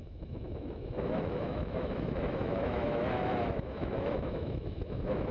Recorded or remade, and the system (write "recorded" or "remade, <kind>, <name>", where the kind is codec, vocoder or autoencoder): remade, autoencoder, DAC-VAE